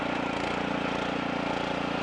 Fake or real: real